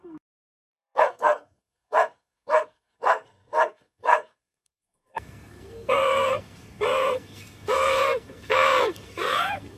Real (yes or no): no